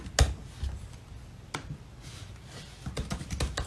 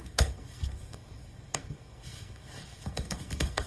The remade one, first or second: second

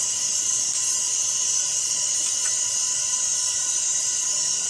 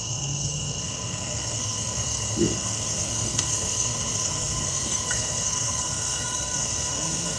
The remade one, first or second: second